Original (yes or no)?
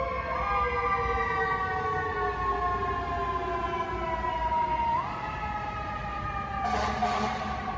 yes